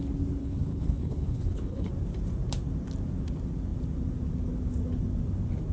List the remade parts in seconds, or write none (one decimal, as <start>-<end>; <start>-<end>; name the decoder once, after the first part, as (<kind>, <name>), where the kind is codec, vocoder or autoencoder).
0.4-1.9 (codec, HILCodec)